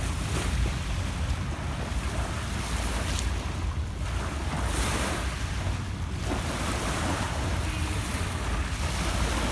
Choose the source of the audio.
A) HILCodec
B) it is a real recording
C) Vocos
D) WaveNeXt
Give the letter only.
B